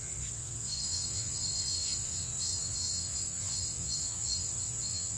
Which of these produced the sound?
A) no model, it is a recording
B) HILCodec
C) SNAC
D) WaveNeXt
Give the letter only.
D